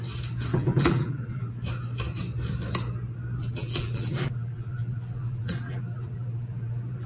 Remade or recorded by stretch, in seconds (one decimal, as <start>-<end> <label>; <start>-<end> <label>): 0.0-0.5 recorded; 0.5-1.5 remade; 1.5-3.4 recorded; 3.4-7.1 remade